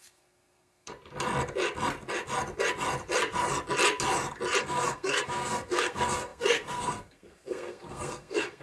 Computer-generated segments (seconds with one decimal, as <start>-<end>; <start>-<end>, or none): 0.0-0.9; 4.6-8.6